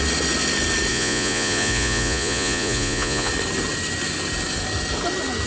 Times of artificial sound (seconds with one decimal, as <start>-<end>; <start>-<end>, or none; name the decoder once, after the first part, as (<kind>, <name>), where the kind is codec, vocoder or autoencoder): 0.9-3.3 (vocoder, Vocos)